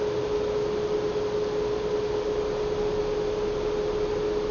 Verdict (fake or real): real